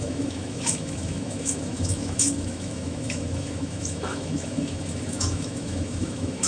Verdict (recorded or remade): remade